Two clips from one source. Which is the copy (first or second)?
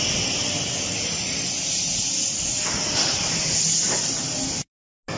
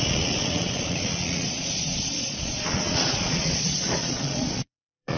second